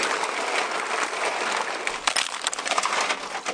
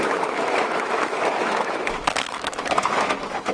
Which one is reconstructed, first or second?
second